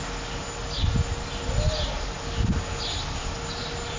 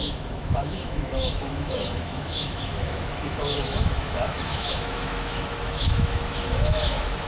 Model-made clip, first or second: second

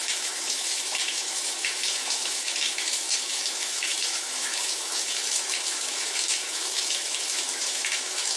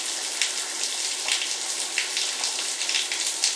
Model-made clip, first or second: first